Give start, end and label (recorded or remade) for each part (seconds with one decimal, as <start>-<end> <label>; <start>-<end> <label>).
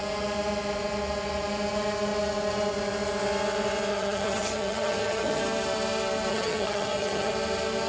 0.0-3.9 recorded; 3.9-5.4 remade; 5.4-6.3 recorded; 6.3-7.3 remade; 7.3-7.9 recorded